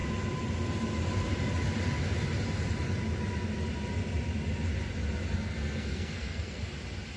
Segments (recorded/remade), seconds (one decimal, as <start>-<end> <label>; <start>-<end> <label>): 0.0-5.6 recorded; 5.6-6.6 remade; 6.6-7.2 recorded